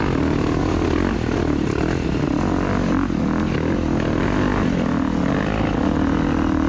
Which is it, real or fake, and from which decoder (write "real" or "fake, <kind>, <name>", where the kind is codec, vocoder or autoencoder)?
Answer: real